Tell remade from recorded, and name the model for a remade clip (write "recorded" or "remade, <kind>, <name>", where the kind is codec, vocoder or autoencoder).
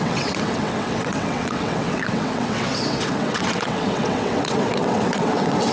remade, vocoder, WaveNeXt